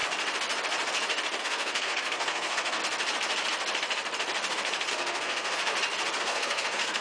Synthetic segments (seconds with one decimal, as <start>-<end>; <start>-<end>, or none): 1.4-2.8; 4.9-5.7; 6.2-7.0